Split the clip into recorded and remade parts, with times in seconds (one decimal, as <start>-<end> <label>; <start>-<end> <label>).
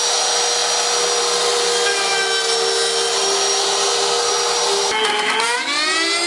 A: 0.0-6.3 recorded